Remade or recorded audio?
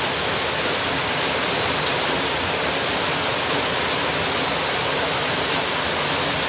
recorded